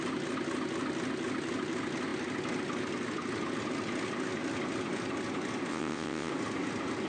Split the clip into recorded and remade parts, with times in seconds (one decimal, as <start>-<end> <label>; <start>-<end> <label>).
0.0-5.7 recorded; 5.7-6.3 remade; 6.3-7.1 recorded